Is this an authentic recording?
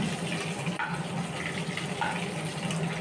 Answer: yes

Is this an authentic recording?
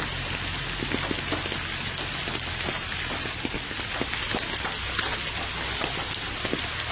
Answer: yes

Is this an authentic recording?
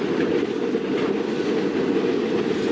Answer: yes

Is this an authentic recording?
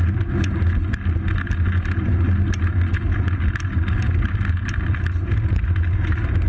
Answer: yes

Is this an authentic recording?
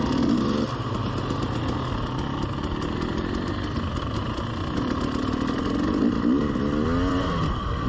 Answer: yes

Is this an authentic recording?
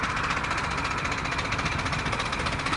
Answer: yes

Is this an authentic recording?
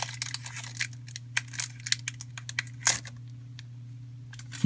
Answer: yes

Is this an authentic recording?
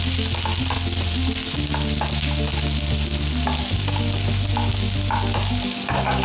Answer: yes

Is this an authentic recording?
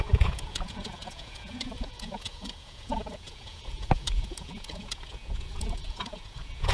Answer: no